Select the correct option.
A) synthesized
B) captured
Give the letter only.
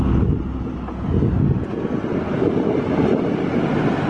B